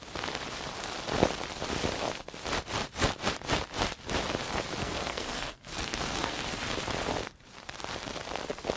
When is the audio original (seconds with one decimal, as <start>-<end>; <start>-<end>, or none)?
0.0-4.8; 6.4-8.8